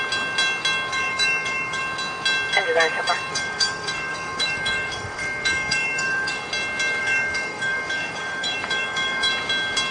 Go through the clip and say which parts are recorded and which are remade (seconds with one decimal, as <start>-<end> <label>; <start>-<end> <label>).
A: 0.0-0.9 recorded; 0.9-1.8 remade; 1.8-3.3 recorded; 3.3-6.4 remade; 6.4-7.0 recorded; 7.0-9.3 remade; 9.3-9.9 recorded